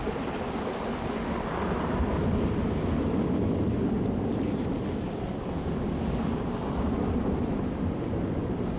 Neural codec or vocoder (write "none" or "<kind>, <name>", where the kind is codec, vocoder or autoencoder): none